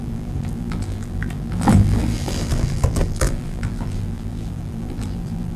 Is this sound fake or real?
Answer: fake